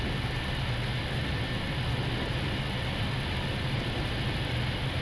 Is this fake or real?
real